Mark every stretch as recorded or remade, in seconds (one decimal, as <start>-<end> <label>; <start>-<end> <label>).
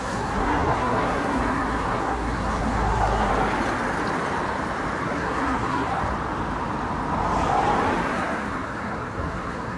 0.0-3.3 remade; 3.3-5.0 recorded; 5.0-6.0 remade; 6.0-8.1 recorded; 8.1-9.8 remade